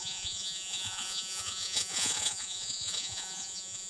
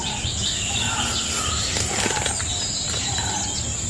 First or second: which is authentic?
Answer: second